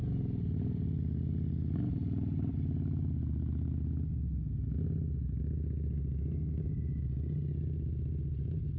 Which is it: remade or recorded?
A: recorded